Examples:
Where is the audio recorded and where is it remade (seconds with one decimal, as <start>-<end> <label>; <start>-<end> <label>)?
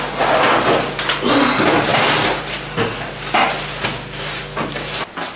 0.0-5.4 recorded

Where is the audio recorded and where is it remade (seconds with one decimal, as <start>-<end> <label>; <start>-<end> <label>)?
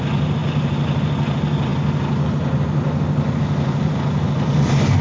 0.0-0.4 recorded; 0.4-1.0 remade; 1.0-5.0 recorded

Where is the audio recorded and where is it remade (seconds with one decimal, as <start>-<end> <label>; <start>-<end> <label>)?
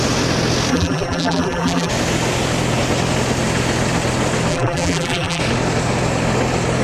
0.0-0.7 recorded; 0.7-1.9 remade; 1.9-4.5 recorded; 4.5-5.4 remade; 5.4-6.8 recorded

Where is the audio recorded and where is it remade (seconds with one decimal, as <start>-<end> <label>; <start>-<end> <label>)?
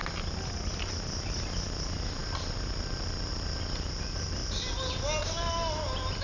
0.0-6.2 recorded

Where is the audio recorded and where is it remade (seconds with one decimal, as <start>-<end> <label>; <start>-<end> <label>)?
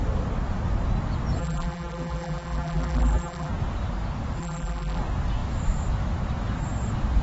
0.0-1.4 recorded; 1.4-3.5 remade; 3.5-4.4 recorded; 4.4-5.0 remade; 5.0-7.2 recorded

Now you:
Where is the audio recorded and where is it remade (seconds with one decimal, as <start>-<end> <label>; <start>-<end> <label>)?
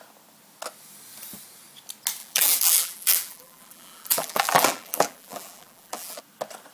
0.0-2.2 recorded; 2.2-6.2 remade; 6.2-6.7 recorded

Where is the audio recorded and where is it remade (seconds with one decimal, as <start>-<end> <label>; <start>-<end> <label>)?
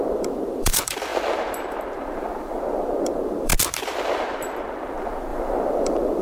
0.0-3.5 remade; 3.5-4.0 recorded; 4.0-6.2 remade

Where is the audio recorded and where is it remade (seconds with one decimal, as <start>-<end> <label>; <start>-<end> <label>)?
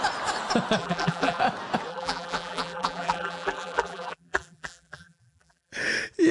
0.0-0.8 recorded; 0.8-1.4 remade; 1.4-1.9 recorded; 1.9-5.7 remade; 5.7-6.3 recorded